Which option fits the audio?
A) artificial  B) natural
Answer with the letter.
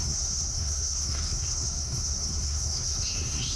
A